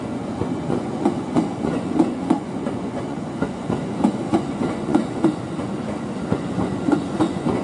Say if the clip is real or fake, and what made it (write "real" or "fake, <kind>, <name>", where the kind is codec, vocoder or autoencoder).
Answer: fake, vocoder, Vocos